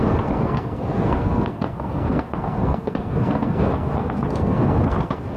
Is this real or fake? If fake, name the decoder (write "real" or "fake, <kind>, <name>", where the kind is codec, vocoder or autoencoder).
fake, codec, SNAC